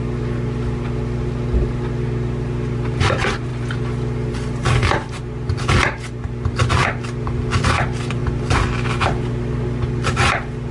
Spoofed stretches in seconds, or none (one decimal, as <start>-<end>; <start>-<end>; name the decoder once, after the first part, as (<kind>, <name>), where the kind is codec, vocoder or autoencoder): none